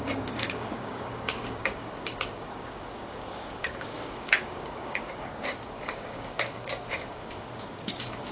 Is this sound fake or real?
fake